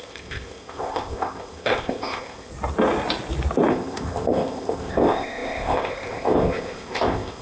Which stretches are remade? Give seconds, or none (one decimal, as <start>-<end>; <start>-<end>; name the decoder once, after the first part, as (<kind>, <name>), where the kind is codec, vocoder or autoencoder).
0.0-2.5 (codec, ZipCodec); 3.7-7.4